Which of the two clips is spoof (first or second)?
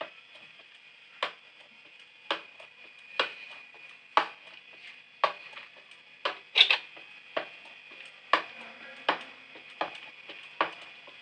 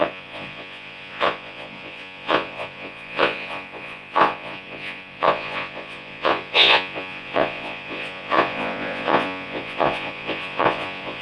second